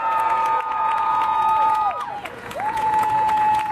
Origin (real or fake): fake